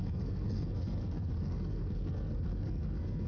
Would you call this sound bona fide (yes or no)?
no